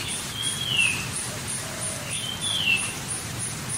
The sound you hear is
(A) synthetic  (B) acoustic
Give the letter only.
B